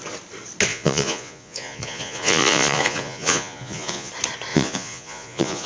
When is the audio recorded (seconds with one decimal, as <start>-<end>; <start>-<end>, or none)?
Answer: 0.0-0.7; 4.1-4.5